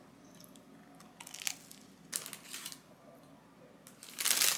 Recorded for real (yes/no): yes